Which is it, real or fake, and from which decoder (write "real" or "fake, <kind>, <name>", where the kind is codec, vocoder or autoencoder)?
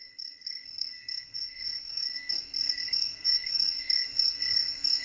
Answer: fake, codec, SNAC